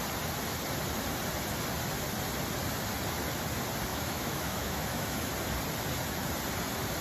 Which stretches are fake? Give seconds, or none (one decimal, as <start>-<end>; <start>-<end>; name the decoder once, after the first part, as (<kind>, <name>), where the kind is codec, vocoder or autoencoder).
3.9-5.3 (autoencoder, DAC-VAE)

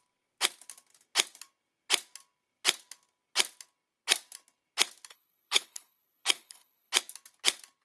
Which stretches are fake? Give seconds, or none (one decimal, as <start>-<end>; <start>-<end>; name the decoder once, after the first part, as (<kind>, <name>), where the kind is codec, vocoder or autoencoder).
5.1-6.9 (codec, HILCodec)